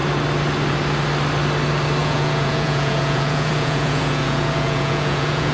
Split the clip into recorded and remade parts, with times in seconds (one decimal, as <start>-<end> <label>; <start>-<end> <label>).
0.0-2.0 recorded; 2.0-5.5 remade